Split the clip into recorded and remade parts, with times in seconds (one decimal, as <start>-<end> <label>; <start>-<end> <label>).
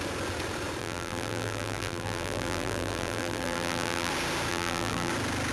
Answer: 0.0-0.8 recorded; 0.8-4.1 remade; 4.1-4.5 recorded; 4.5-5.1 remade; 5.1-5.5 recorded